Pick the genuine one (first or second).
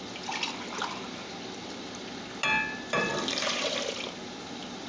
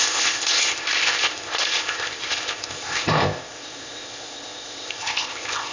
first